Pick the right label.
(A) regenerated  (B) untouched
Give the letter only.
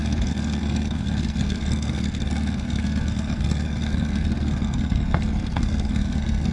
A